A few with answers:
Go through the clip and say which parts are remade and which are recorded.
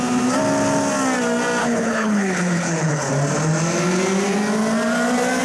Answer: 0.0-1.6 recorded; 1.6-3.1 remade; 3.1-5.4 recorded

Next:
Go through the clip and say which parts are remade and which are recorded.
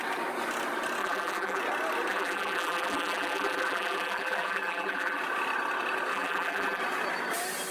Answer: 0.0-1.0 recorded; 1.0-1.6 remade; 1.6-2.1 recorded; 2.1-5.2 remade; 5.2-6.1 recorded; 6.1-6.8 remade; 6.8-7.7 recorded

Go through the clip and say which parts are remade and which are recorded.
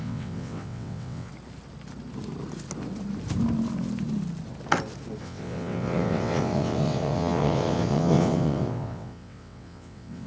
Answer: 0.0-1.3 remade; 1.3-5.2 recorded; 5.2-10.3 remade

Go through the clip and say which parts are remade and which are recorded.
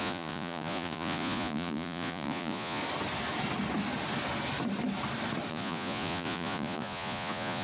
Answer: 0.0-2.8 remade; 2.8-5.5 recorded; 5.5-7.6 remade